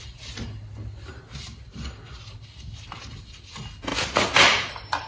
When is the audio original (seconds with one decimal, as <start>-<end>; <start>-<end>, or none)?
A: 0.0-5.1